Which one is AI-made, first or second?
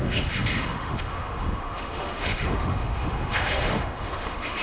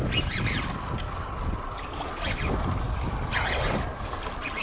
first